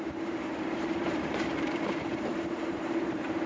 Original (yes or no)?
no